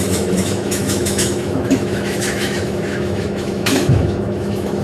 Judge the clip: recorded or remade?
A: remade